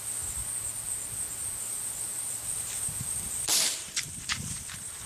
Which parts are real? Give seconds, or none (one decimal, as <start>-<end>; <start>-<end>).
0.4-1.6